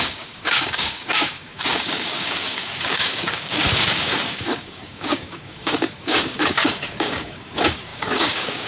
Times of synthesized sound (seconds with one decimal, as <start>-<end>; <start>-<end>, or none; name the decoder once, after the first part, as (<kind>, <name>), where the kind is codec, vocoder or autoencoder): 0.0-8.7 (codec, DAC)

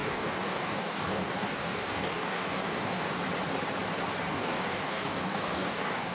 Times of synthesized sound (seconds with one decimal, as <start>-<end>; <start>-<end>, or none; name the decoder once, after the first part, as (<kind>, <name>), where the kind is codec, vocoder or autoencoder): 0.0-3.2 (codec, DAC); 4.3-6.1

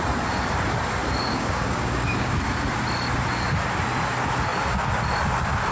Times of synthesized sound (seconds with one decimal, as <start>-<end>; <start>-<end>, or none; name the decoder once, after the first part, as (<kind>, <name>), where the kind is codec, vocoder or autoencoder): 1.2-2.4 (codec, DAC)